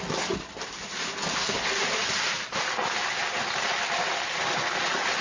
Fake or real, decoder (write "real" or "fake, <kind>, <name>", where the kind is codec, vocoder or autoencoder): real